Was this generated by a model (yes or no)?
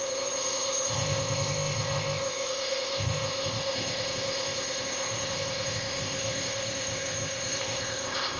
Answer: yes